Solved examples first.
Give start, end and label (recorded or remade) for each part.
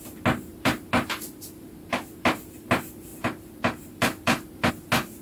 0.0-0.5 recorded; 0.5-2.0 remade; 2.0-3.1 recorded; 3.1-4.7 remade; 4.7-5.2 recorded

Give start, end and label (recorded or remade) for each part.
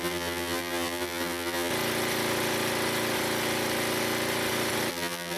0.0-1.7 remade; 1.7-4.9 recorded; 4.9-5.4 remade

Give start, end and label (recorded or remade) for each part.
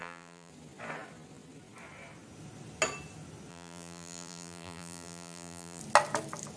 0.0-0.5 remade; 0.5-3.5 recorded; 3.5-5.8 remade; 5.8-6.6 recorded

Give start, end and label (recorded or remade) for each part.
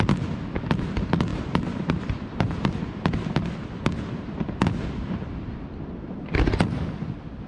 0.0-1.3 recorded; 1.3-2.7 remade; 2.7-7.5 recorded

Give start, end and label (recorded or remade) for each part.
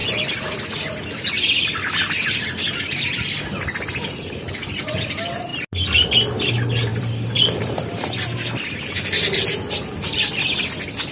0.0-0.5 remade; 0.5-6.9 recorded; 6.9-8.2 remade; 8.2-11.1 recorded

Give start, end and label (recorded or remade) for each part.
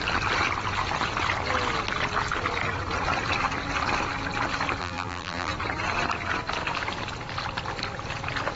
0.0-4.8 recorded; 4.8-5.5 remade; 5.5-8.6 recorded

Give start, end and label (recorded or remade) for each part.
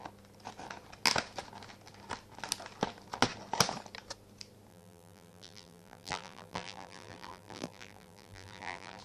0.0-4.7 recorded; 4.7-9.0 remade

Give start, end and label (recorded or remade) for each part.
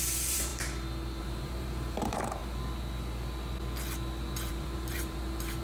0.0-0.5 remade; 0.5-1.2 recorded; 1.2-2.4 remade; 2.4-4.5 recorded; 4.5-5.6 remade